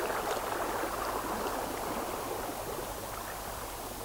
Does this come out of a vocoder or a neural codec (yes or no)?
no